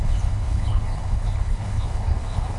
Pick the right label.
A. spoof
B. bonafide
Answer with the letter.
A